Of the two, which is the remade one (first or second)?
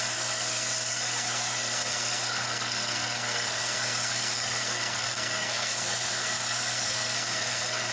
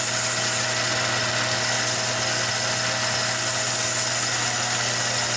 first